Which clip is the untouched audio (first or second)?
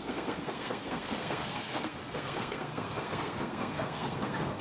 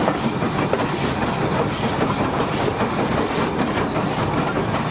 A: second